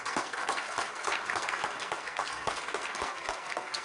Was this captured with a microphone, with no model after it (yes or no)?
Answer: no